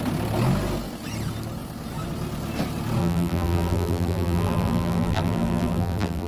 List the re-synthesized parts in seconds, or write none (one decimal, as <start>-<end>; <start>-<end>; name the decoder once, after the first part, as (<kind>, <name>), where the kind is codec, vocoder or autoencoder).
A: 3.0-6.3 (vocoder, BigVGAN v2)